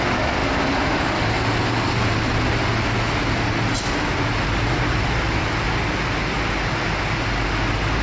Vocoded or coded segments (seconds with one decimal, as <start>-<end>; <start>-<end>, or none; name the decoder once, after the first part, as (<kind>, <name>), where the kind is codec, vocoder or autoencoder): none